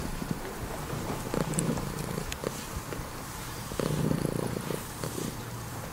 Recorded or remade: remade